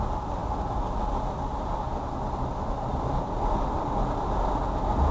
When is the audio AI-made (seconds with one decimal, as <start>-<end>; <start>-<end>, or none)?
none